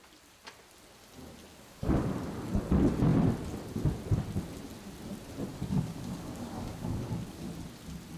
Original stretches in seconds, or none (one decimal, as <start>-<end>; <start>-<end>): 0.0-1.5; 2.1-5.5; 7.5-8.2